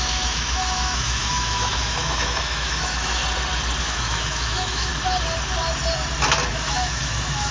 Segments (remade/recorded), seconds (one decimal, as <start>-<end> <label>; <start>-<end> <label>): 0.0-3.2 remade; 3.2-3.8 recorded; 3.8-4.9 remade; 4.9-6.5 recorded; 6.5-7.5 remade